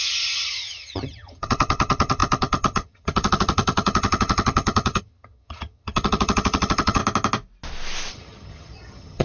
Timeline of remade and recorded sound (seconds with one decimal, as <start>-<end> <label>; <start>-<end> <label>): 0.0-7.0 remade; 7.0-8.1 recorded; 8.1-9.2 remade

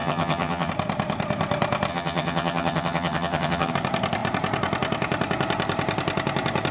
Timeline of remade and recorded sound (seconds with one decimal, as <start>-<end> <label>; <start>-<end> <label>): 0.0-0.7 remade; 0.7-1.9 recorded; 1.9-3.7 remade; 3.7-6.7 recorded

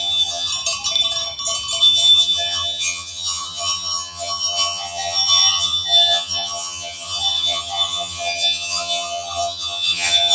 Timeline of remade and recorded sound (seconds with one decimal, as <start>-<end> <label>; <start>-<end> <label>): 0.0-0.5 remade; 0.5-1.8 recorded; 1.8-10.3 remade

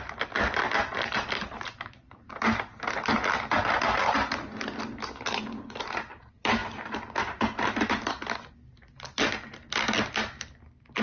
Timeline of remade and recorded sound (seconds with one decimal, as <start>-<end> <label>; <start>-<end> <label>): 0.0-11.0 recorded